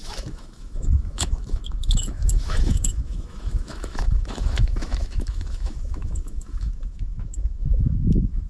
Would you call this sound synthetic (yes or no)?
yes